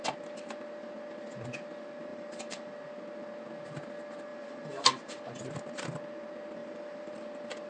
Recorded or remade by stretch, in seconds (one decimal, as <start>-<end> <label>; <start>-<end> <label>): 0.0-2.1 recorded; 2.1-2.7 remade; 2.7-4.3 recorded; 4.3-5.4 remade; 5.4-6.6 recorded; 6.6-7.1 remade; 7.1-7.7 recorded

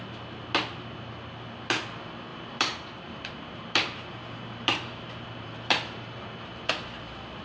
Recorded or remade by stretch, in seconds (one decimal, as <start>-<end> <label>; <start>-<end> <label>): 0.0-2.3 recorded; 2.3-6.7 remade; 6.7-7.4 recorded

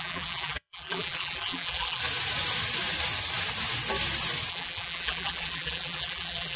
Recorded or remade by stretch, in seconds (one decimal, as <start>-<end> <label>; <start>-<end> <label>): 0.0-2.0 remade; 2.0-4.5 recorded; 4.5-6.6 remade

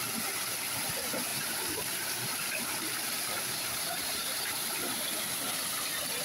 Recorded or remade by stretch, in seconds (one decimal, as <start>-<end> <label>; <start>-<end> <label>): 0.0-1.3 recorded; 1.3-5.0 remade; 5.0-6.2 recorded

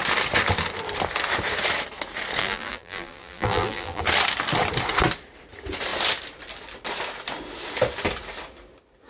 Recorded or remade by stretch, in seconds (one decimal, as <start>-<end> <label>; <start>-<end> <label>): 0.0-2.4 recorded; 2.4-4.0 remade; 4.0-9.1 recorded